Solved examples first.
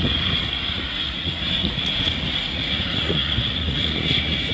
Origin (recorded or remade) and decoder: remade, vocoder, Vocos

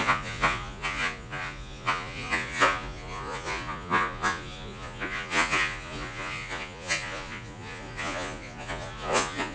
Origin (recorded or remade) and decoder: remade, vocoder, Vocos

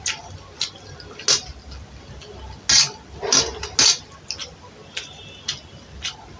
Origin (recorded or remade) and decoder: recorded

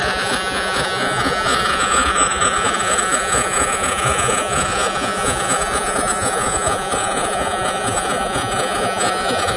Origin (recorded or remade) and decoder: remade, vocoder, Vocos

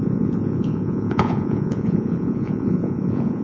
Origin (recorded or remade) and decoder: remade, vocoder, Vocos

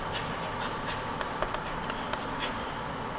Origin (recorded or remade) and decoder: recorded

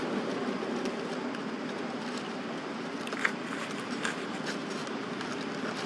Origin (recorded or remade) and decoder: recorded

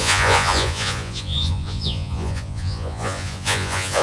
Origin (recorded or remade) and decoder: remade, vocoder, Vocos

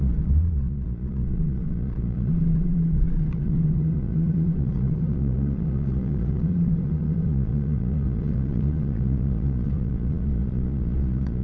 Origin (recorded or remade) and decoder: remade, vocoder, Vocos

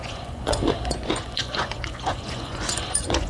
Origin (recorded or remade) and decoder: remade, vocoder, Vocos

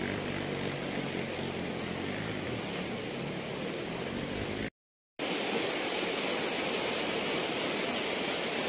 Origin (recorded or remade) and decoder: recorded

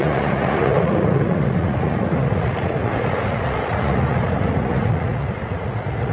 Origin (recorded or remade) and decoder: remade, vocoder, Vocos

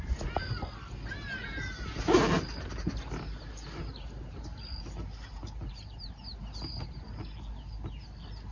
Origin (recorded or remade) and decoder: recorded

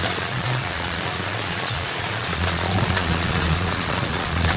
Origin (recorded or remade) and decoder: remade, vocoder, Vocos